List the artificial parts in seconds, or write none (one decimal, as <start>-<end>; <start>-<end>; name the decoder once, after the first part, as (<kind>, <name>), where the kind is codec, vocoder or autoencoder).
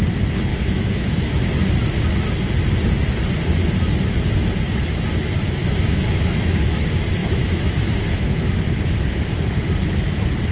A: 0.5-1.5 (autoencoder, DAC-VAE); 5.6-6.8; 7.2-8.5